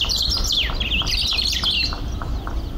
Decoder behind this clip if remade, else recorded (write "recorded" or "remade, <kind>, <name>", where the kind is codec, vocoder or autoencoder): recorded